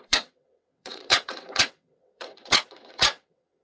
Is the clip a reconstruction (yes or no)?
yes